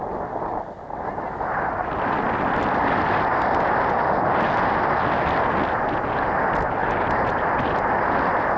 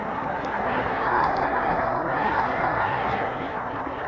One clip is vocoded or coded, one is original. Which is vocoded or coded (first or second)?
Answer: second